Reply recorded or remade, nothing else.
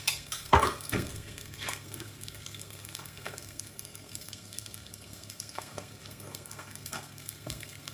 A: remade